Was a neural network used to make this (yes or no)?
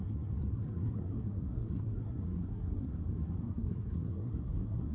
yes